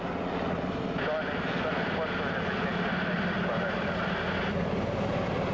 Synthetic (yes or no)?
no